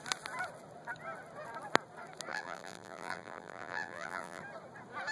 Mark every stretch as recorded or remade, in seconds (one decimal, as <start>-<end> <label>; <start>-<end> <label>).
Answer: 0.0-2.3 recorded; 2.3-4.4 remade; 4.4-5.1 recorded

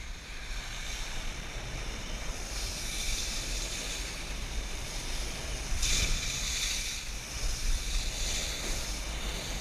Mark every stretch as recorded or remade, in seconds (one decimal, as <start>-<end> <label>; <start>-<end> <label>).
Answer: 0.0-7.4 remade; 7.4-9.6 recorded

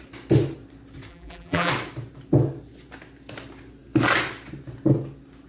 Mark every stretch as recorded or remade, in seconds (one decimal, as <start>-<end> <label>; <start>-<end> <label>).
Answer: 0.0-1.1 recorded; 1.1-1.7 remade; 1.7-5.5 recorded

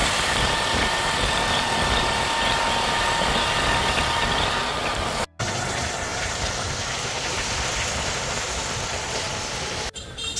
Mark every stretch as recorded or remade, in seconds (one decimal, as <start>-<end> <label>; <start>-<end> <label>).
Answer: 0.0-0.8 remade; 0.8-6.1 recorded; 6.1-6.7 remade; 6.7-10.4 recorded

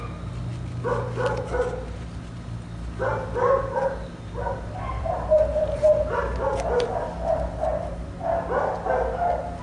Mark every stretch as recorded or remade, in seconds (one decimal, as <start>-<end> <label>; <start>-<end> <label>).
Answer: 0.0-4.9 recorded; 4.9-5.5 remade; 5.5-7.7 recorded; 7.7-8.3 remade; 8.3-9.6 recorded

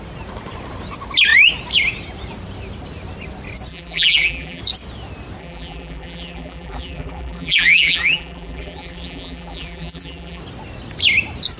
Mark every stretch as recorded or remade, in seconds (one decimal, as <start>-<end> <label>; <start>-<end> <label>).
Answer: 0.0-3.7 recorded; 3.7-4.6 remade; 4.6-5.4 recorded; 5.4-10.4 remade; 10.4-11.6 recorded